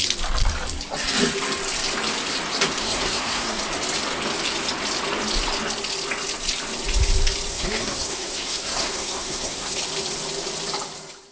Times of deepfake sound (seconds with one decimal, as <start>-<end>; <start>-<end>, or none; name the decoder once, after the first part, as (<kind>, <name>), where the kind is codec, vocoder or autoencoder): 2.8-3.6 (codec, SNAC); 7.5-9.8